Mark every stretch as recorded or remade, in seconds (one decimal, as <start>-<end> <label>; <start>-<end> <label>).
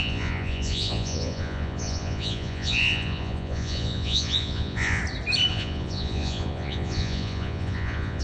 0.0-5.0 remade; 5.0-5.5 recorded; 5.5-8.2 remade